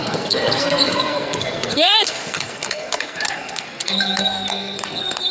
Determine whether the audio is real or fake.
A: fake